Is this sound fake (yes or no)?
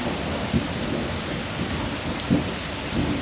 no